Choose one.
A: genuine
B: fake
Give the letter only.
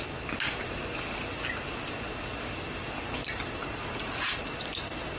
A